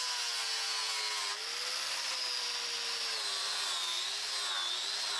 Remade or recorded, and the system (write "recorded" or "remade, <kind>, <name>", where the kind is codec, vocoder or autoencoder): recorded